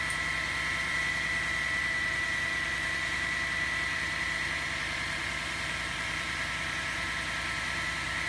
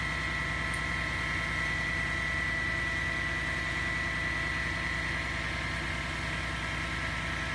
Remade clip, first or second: first